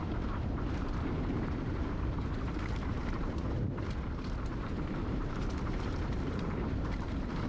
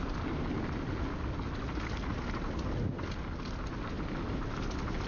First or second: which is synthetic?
first